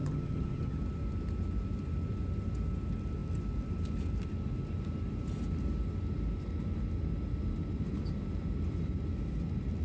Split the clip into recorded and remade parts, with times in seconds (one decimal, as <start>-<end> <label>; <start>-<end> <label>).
0.0-0.8 remade; 0.8-9.8 recorded